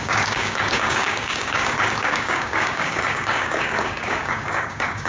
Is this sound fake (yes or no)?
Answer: yes